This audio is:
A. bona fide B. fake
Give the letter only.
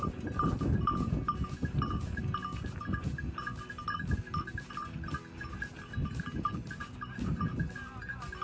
A